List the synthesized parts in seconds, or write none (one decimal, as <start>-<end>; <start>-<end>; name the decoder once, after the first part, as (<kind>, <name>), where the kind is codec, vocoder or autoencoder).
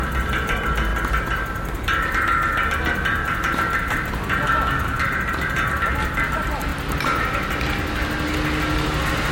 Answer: none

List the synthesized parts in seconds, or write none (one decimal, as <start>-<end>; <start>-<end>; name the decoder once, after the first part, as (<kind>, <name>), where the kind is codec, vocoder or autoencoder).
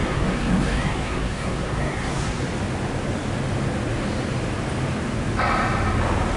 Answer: 0.0-2.4 (codec, SNAC)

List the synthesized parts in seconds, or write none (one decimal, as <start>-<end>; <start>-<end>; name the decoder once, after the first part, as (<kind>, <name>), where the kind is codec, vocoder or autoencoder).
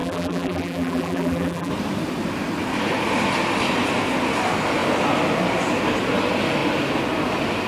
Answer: 0.0-1.7 (vocoder, BigVGAN v2)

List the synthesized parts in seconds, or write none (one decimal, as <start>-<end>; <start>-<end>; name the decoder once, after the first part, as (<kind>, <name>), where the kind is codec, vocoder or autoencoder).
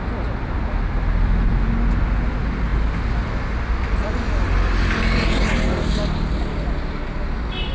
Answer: none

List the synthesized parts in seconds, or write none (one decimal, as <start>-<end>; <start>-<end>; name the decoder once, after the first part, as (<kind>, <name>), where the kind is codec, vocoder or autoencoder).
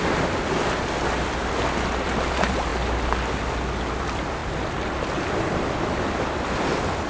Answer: 0.0-2.7 (vocoder, BigVGAN v2); 4.0-7.1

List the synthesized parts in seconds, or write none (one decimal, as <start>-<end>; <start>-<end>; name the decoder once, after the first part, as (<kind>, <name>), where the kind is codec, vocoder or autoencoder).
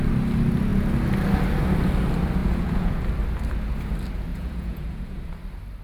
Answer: 2.4-3.0 (vocoder, Vocos); 4.3-5.2